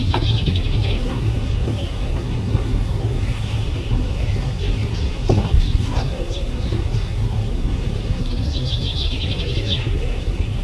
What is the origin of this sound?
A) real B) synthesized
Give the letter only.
B